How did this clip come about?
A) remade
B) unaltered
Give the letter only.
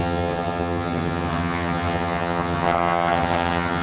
A